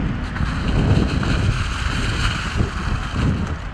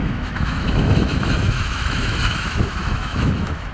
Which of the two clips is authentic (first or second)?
first